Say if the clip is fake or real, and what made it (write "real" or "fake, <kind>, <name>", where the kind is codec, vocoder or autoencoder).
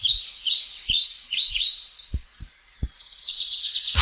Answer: fake, vocoder, Vocos